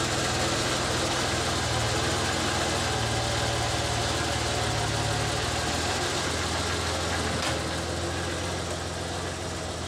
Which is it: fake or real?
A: real